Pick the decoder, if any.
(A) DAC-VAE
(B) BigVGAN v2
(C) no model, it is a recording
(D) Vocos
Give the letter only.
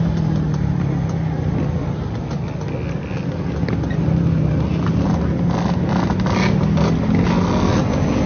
C